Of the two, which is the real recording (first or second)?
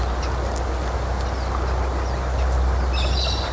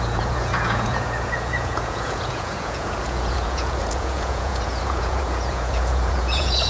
first